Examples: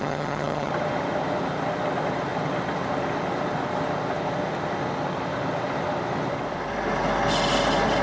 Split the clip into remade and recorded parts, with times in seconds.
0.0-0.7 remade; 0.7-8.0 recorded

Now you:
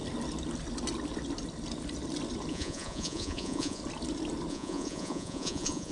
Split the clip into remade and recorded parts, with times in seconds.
0.0-2.5 recorded; 2.5-3.8 remade; 3.8-4.5 recorded; 4.5-5.9 remade

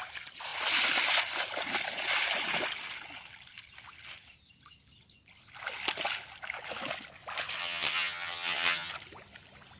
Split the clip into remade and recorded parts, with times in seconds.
0.0-7.6 recorded; 7.6-8.9 remade; 8.9-9.8 recorded

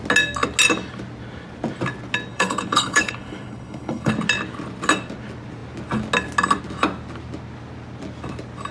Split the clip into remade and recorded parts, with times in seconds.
0.0-2.3 recorded; 2.3-4.1 remade; 4.1-8.7 recorded

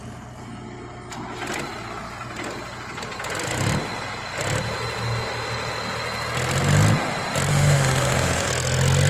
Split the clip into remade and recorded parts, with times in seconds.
0.0-7.5 recorded; 7.5-8.5 remade; 8.5-9.1 recorded

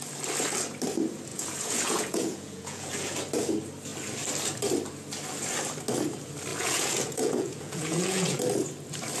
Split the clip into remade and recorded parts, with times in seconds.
0.0-1.3 recorded; 1.3-2.9 remade; 2.9-6.5 recorded; 6.5-8.4 remade; 8.4-9.2 recorded

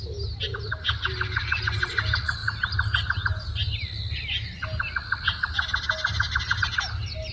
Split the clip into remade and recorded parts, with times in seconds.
0.0-7.3 recorded